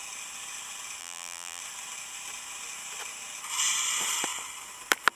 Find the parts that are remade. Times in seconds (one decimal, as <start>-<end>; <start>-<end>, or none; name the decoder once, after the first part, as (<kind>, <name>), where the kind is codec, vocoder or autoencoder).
1.0-1.6 (vocoder, BigVGAN v2)